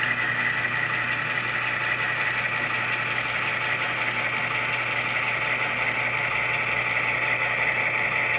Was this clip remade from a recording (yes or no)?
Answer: no